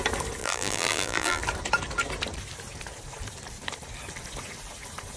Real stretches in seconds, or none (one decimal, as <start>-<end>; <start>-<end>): 0.0-0.4; 1.4-5.2